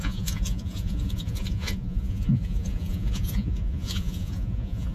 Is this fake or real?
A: fake